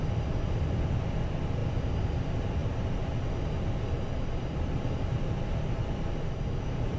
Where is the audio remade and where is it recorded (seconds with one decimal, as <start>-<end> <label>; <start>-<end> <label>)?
0.0-7.0 recorded